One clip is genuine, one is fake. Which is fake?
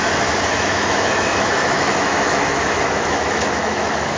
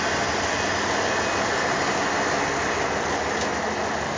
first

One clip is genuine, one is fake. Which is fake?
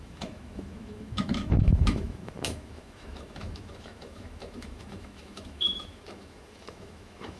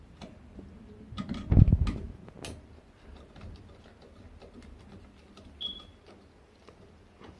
first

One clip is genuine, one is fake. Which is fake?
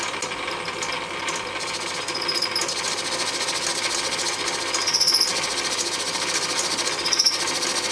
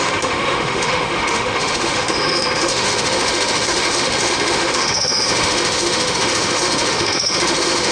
second